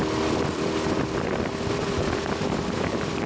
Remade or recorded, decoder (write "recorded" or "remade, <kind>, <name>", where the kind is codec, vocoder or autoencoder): remade, vocoder, BigVGAN v2